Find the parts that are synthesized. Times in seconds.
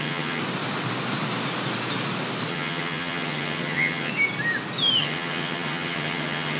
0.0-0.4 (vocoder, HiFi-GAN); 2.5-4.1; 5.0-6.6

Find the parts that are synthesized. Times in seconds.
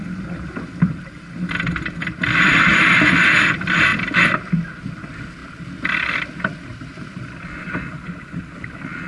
5.4-8.4 (vocoder, BigVGAN v2)